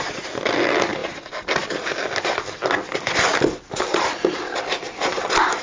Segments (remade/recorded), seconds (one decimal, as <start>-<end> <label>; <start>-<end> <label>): 0.0-5.6 recorded